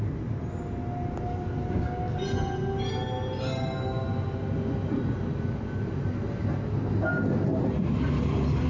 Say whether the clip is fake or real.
real